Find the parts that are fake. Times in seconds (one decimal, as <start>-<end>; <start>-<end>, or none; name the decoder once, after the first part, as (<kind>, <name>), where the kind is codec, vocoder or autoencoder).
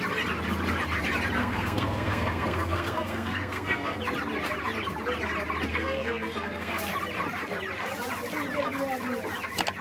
1.4-4.0 (codec, SNAC); 5.7-6.8